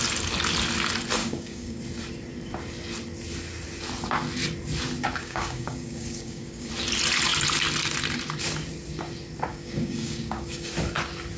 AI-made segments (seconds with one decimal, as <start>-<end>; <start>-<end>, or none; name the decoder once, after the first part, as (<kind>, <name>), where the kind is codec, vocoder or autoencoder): 1.2-1.8 (codec, DAC); 5.2-6.7; 9.5-10.7

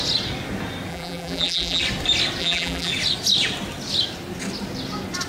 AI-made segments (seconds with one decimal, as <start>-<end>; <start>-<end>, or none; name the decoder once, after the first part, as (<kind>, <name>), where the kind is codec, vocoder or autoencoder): 0.9-1.8 (vocoder, BigVGAN v2); 2.4-2.9

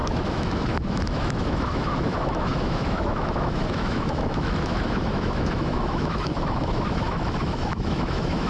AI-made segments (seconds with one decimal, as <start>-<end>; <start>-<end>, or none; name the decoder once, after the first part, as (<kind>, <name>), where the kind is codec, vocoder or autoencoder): 0.0-8.5 (autoencoder, DAC-VAE)

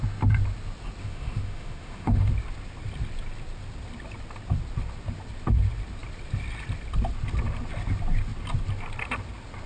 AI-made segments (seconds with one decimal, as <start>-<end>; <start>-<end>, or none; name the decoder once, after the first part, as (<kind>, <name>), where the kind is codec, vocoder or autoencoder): 1.0-2.3 (autoencoder, DAC-VAE)

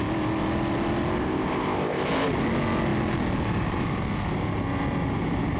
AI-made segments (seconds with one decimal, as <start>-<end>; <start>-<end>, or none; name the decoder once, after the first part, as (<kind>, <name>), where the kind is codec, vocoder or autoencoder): 1.2-2.1 (codec, ZipCodec)

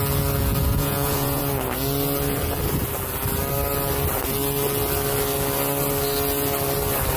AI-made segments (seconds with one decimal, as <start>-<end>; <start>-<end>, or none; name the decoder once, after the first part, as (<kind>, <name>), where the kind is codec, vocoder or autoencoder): 0.6-1.4 (vocoder, Vocos)

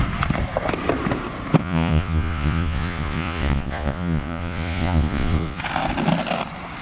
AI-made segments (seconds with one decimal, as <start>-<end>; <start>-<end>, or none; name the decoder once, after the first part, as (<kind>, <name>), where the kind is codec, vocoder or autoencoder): 1.6-5.6 (vocoder, Vocos)